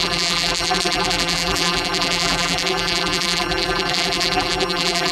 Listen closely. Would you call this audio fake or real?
fake